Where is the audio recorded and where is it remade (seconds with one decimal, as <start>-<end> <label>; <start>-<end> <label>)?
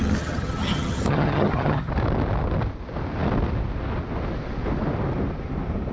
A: 0.0-1.9 remade; 1.9-5.9 recorded